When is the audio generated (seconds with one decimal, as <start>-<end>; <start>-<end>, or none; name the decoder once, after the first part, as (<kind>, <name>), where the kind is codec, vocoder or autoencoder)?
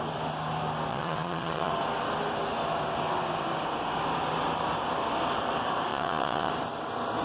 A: 0.9-1.7 (vocoder, Vocos); 5.9-6.5